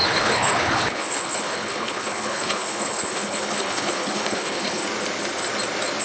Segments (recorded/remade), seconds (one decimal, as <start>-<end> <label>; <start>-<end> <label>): 0.0-4.8 remade; 4.8-6.0 recorded